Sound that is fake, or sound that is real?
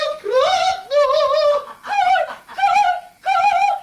fake